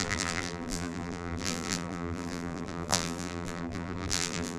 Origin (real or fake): fake